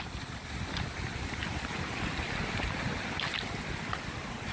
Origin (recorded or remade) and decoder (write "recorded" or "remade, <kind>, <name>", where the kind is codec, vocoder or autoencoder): recorded